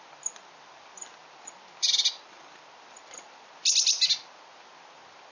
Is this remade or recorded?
recorded